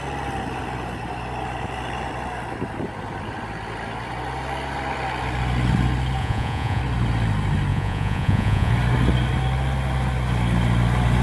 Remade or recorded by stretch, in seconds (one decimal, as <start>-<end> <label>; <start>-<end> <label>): 0.0-6.2 recorded; 6.2-6.8 remade; 6.8-7.7 recorded; 7.7-8.7 remade; 8.7-11.2 recorded